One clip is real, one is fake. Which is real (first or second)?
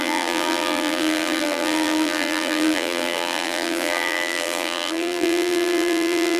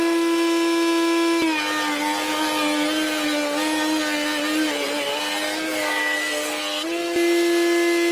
second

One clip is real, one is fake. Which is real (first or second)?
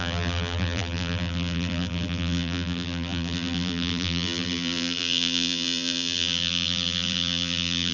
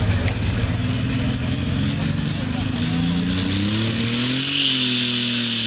second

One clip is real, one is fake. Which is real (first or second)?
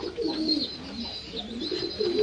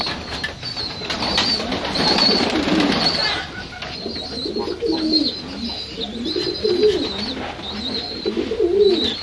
second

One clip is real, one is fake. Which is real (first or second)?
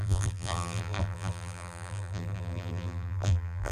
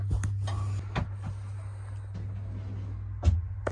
second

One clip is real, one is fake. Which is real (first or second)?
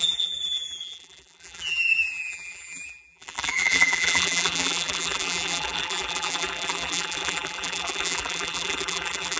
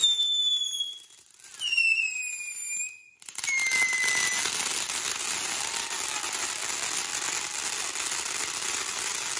second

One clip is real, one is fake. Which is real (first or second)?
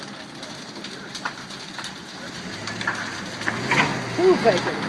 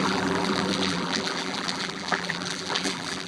first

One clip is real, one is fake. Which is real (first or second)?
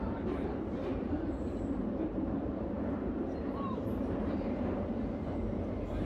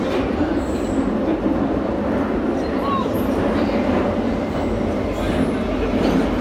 second